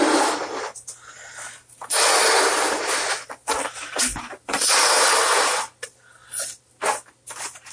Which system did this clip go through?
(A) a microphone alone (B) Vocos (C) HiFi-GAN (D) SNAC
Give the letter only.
A